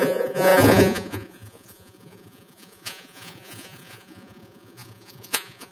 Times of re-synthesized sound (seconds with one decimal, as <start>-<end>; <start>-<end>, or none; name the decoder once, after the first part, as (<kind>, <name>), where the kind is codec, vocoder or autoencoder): 0.0-5.7 (vocoder, Vocos)